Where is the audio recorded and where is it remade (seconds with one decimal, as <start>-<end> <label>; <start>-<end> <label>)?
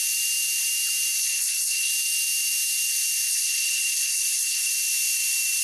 0.0-1.2 recorded; 1.2-1.9 remade; 1.9-3.3 recorded; 3.3-4.7 remade; 4.7-5.6 recorded